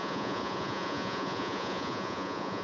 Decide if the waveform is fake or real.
fake